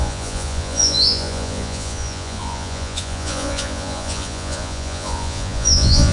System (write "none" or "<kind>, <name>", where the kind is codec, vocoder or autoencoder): vocoder, Vocos